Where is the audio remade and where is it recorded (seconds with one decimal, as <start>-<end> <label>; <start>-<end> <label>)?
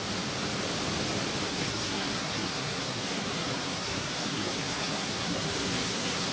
0.0-1.5 recorded; 1.5-6.3 remade